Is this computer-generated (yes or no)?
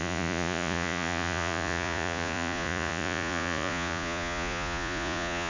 yes